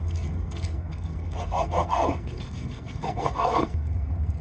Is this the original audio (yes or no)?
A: no